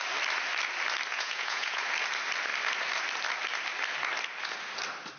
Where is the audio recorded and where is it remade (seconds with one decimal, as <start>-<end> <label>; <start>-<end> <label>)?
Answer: 0.0-1.1 recorded; 1.1-1.8 remade; 1.8-5.2 recorded